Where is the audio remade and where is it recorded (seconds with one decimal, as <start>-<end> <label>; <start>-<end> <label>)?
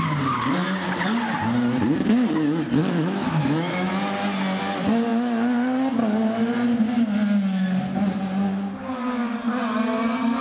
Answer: 0.0-2.8 recorded; 2.8-3.9 remade; 3.9-10.4 recorded